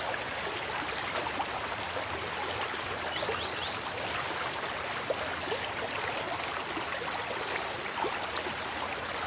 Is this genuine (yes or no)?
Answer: yes